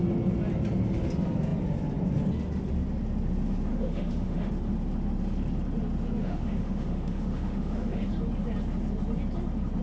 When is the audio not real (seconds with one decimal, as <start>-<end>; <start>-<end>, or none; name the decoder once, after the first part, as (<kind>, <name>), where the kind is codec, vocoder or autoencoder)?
3.7-4.5 (autoencoder, DAC-VAE); 6.2-8.1

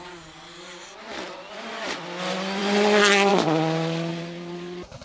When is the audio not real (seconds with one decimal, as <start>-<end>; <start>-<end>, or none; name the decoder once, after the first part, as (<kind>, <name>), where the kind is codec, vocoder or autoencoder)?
4.1-5.0 (vocoder, BigVGAN v2)

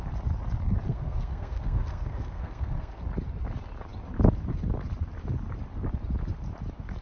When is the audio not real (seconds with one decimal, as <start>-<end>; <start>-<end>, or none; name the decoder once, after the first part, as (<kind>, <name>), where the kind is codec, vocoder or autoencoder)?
0.9-3.0 (codec, SNAC)

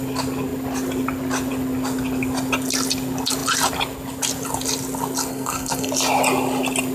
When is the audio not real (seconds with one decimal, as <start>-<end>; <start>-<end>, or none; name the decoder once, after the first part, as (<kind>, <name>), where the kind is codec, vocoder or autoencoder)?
5.3-5.9 (codec, SNAC)

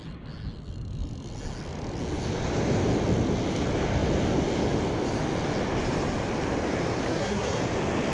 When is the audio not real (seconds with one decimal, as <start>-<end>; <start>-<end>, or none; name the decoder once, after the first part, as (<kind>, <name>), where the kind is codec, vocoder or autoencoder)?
7.1-7.6 (codec, SNAC)